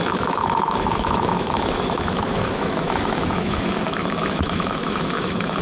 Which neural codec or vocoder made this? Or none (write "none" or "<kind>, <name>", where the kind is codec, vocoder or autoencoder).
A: autoencoder, DAC-VAE